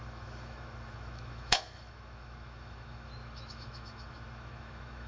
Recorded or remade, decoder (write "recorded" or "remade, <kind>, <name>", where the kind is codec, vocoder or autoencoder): remade, autoencoder, DAC-VAE